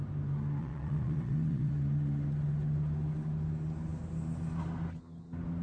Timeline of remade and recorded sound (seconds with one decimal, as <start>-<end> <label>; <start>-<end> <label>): 0.0-0.6 recorded; 0.6-1.7 remade; 1.7-5.6 recorded